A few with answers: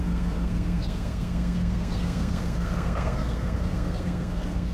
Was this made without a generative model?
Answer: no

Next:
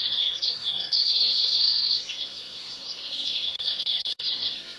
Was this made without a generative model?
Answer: no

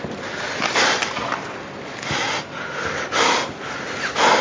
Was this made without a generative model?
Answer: yes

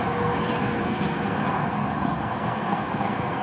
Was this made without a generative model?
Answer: no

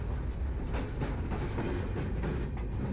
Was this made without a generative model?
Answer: yes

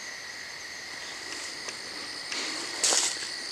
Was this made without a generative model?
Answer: yes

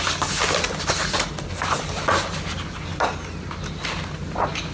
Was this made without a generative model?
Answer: yes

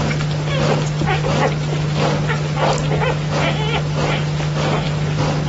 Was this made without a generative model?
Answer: yes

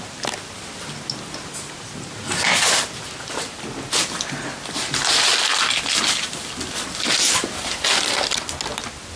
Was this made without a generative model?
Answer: yes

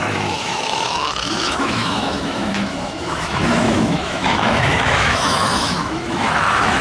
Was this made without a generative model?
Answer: no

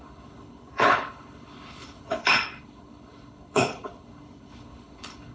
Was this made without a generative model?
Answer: no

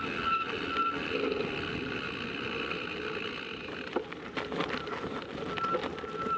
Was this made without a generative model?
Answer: yes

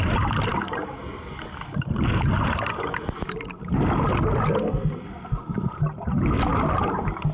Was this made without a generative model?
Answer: yes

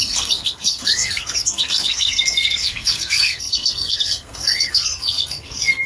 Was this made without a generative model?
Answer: no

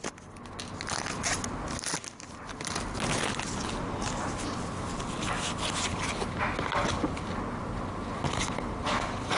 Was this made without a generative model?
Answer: yes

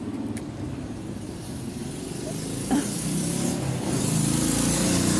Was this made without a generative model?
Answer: yes